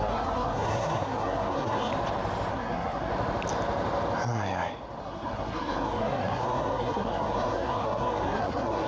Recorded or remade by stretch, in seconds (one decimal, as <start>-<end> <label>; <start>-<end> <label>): 0.0-1.9 remade; 1.9-2.5 recorded; 2.5-3.1 remade; 3.1-5.0 recorded; 5.0-8.9 remade

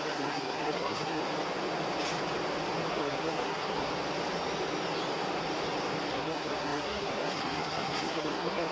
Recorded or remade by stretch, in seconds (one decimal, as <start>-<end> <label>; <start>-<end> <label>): 0.0-1.2 remade; 1.2-2.9 recorded; 2.9-3.9 remade; 3.9-6.1 recorded; 6.1-8.7 remade

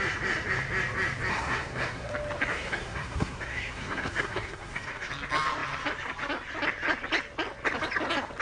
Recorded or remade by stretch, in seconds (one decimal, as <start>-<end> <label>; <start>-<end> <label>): 0.0-1.3 recorded; 1.3-2.1 remade; 2.1-2.5 recorded; 2.5-5.1 remade; 5.1-8.4 recorded

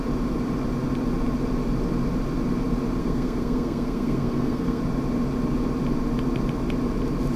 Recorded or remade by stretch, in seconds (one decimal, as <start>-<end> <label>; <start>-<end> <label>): 0.0-3.0 recorded; 3.0-4.8 remade; 4.8-7.4 recorded

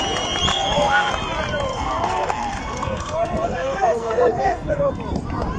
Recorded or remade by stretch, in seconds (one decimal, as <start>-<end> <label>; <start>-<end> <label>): 0.0-0.5 recorded; 0.5-1.1 remade; 1.1-1.7 recorded; 1.7-4.9 remade; 4.9-5.6 recorded